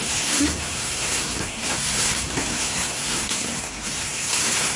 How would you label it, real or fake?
fake